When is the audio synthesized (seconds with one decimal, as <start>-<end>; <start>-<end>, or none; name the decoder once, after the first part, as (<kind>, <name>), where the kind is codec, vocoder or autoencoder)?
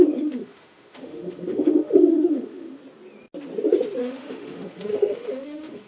0.0-2.8 (autoencoder, DAC-VAE); 4.0-5.9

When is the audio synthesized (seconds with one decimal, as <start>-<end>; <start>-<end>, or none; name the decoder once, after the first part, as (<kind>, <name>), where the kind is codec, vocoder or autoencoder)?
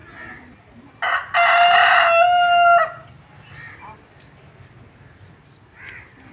none